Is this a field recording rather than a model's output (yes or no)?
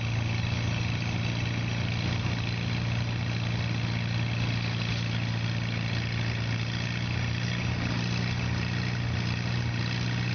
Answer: yes